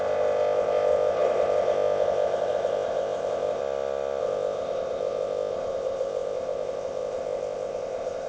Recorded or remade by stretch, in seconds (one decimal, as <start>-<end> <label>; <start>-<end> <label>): 0.0-3.6 remade; 3.6-4.2 recorded; 4.2-8.3 remade

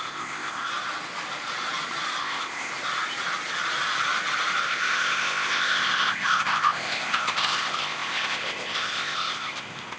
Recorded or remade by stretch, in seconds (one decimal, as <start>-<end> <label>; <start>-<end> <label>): 0.0-0.7 remade; 0.7-2.2 recorded; 2.2-2.7 remade; 2.7-4.6 recorded; 4.6-10.0 remade

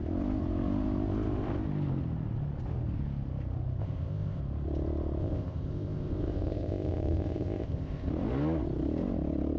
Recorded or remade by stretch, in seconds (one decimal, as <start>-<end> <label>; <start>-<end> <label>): 0.0-3.8 recorded; 3.8-4.4 remade; 4.4-5.2 recorded; 5.2-8.1 remade; 8.1-9.6 recorded

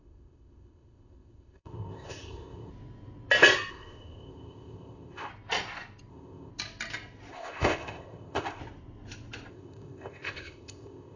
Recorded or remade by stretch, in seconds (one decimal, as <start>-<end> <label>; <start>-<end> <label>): 0.0-2.7 remade; 2.7-3.7 recorded; 3.7-5.3 remade; 5.3-6.1 recorded; 6.1-6.5 remade; 6.5-7.3 recorded; 7.3-8.6 remade; 8.6-9.5 recorded; 9.5-11.2 remade